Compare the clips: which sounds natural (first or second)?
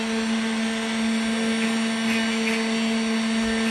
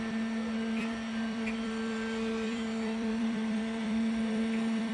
first